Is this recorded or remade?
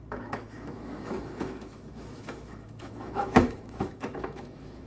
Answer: remade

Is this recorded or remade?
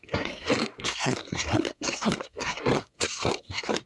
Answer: remade